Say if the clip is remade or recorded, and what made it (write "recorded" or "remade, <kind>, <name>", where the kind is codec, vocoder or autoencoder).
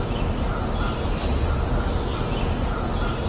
recorded